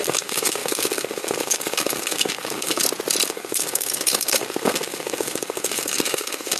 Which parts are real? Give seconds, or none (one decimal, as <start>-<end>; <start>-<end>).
2.8-3.3